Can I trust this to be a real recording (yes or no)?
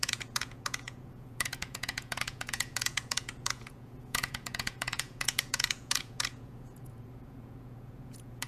no